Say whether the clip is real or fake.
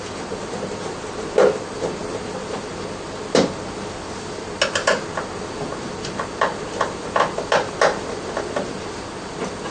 real